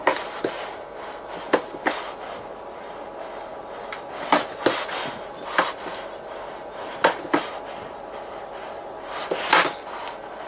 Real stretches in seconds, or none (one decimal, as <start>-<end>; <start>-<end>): 0.0-10.5